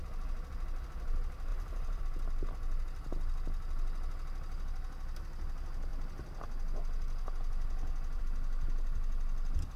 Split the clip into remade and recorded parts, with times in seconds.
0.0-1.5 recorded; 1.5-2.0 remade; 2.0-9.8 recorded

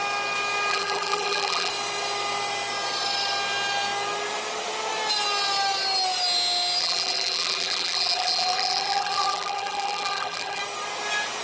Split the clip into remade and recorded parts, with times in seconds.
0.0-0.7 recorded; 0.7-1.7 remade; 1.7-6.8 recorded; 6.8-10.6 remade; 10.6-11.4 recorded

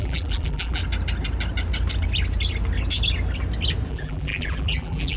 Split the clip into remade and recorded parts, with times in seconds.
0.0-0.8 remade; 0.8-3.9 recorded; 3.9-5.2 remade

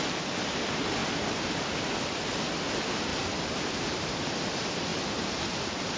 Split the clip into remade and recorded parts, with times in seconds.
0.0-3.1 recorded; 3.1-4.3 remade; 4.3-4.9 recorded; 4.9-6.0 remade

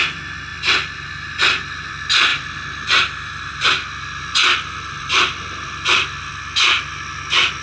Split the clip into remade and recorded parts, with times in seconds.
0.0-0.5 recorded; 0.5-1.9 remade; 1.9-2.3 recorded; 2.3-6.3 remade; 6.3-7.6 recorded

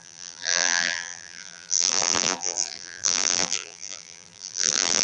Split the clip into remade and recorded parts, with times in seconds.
0.0-5.0 remade